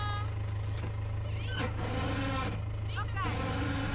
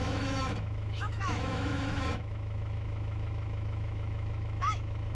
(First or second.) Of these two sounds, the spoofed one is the second